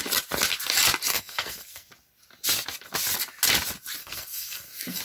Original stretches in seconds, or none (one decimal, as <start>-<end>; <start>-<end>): 0.0-1.1; 1.9-4.0